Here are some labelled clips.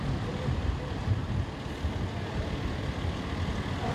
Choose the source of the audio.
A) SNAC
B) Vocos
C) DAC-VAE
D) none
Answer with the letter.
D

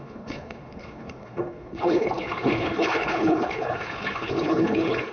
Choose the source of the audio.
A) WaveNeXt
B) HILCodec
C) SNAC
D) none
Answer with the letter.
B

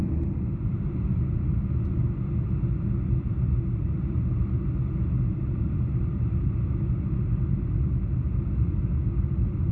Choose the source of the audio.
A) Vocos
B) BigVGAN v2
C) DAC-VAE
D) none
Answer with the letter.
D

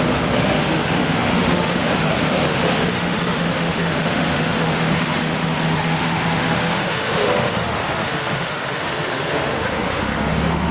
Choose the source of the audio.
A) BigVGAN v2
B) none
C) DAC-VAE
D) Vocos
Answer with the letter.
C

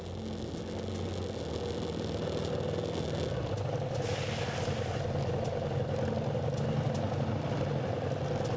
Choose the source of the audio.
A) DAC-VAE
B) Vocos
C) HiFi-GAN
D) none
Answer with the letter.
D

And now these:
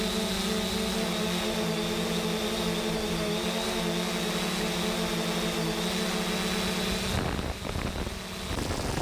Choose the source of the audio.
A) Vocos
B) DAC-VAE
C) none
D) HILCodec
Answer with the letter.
C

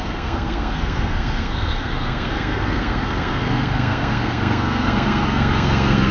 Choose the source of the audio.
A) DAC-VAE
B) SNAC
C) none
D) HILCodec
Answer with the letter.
B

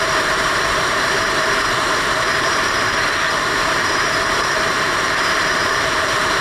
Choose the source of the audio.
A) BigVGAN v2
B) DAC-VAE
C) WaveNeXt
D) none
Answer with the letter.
A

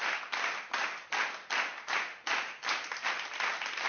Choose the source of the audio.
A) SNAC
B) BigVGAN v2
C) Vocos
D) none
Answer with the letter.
B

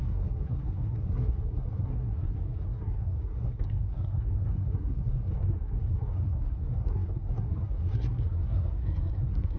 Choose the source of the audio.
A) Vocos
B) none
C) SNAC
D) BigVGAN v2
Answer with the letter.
C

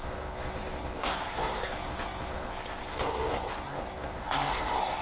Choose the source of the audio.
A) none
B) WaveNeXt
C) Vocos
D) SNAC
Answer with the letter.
D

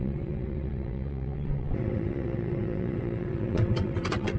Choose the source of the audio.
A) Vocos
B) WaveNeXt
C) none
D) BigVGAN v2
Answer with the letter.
B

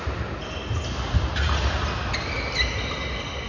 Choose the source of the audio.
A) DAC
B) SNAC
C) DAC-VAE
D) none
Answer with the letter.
D